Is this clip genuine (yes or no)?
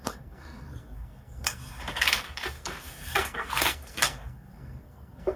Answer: no